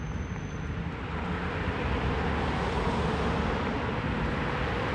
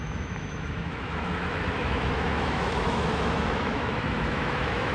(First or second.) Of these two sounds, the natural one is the first